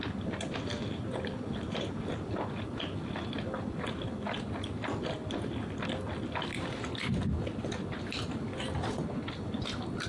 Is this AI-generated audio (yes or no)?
no